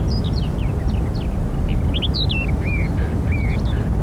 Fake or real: real